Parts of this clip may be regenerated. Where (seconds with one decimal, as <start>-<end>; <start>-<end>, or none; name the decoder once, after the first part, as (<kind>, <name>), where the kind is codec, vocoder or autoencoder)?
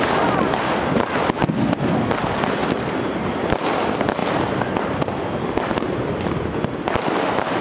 2.6-3.6 (vocoder, BigVGAN v2); 4.2-5.8